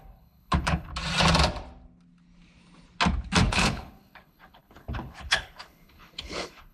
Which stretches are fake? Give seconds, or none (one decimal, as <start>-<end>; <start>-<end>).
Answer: 0.0-0.9; 3.5-6.7